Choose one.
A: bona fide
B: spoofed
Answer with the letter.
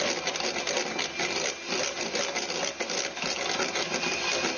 A